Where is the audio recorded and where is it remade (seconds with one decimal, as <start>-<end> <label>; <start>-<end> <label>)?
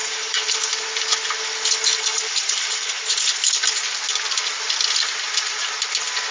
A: 0.0-0.7 remade; 0.7-1.9 recorded; 1.9-3.1 remade; 3.1-6.3 recorded